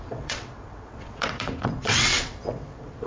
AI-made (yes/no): yes